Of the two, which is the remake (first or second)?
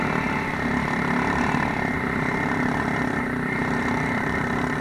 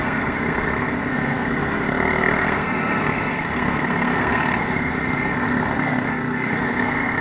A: second